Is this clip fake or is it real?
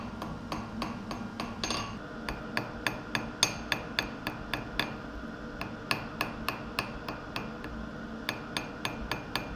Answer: real